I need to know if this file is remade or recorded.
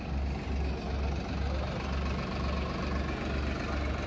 recorded